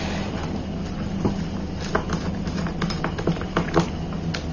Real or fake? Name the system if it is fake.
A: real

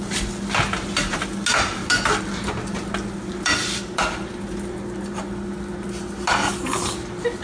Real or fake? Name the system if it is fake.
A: real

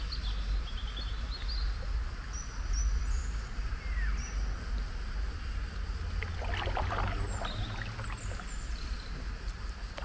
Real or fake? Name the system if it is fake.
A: real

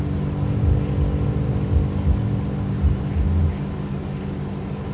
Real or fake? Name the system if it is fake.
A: real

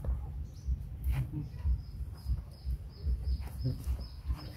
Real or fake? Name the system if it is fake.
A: real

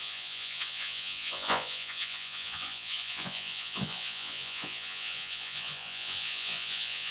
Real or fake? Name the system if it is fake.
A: fake, vocoder, Vocos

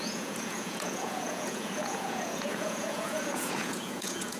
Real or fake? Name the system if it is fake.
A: fake, vocoder, Vocos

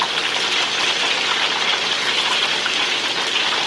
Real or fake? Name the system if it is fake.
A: real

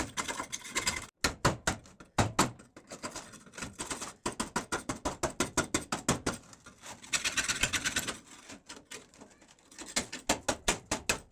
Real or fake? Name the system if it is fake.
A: real